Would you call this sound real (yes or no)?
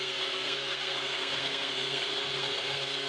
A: no